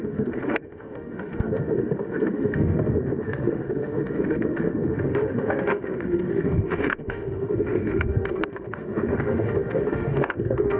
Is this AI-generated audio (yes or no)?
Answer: yes